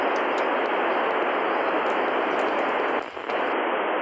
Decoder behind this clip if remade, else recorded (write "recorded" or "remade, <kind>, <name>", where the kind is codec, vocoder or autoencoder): recorded